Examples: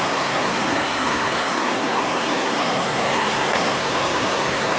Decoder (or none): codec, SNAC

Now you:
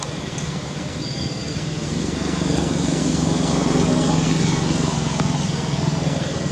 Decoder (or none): codec, SNAC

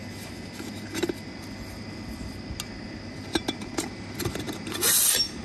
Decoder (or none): none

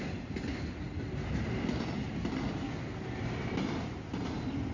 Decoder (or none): none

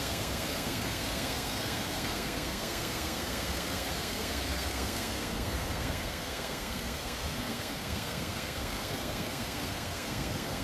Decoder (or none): codec, SNAC